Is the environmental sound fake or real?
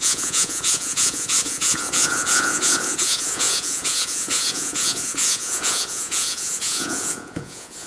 fake